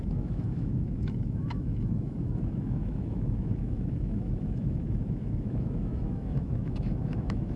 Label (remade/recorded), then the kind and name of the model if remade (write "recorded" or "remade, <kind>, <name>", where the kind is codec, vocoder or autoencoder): remade, autoencoder, DAC-VAE